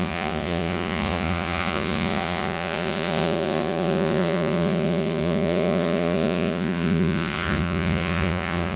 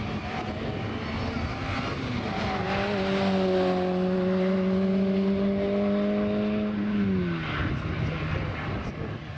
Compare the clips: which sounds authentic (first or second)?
second